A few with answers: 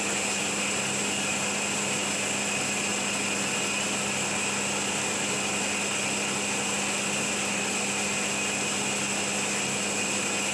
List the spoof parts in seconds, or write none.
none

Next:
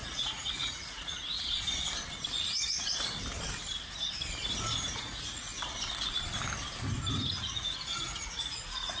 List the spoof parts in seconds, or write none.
0.0-1.2 (vocoder, Vocos); 4.9-5.5; 7.3-9.0

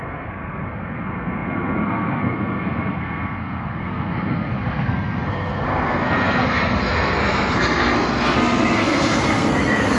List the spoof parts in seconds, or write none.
0.0-10.0 (codec, SNAC)

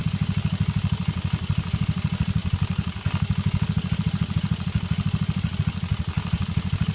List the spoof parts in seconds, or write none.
none

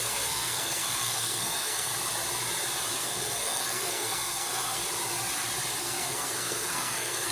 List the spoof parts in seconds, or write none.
0.0-1.9 (codec, SNAC); 2.9-4.8; 5.8-7.3

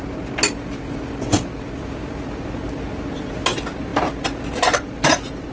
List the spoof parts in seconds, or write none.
none

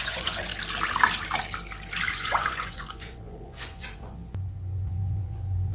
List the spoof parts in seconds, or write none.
0.0-0.5 (vocoder, Vocos); 2.1-5.7

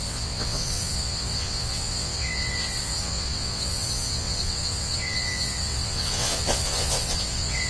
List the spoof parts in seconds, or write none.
0.0-7.7 (vocoder, WaveNeXt)